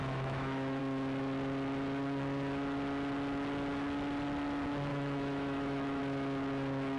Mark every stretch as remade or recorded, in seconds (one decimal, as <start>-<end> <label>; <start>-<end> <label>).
0.0-0.8 remade; 0.8-4.9 recorded; 4.9-6.0 remade; 6.0-7.0 recorded